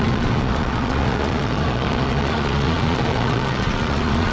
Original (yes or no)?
no